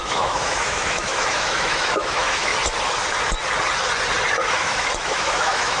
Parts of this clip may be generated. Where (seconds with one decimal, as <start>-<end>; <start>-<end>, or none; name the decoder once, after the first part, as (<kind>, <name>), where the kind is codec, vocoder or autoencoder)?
0.0-2.5 (autoencoder, DAC-VAE); 4.5-5.8